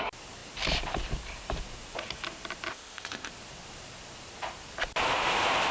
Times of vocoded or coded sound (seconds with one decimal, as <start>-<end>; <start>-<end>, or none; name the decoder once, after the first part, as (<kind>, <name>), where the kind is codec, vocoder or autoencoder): 2.7-3.3 (codec, ZipCodec)